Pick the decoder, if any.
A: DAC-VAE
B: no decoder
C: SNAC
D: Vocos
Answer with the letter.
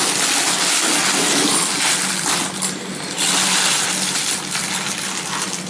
B